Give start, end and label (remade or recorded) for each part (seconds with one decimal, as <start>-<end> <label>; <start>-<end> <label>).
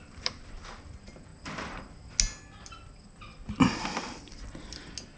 0.0-5.2 recorded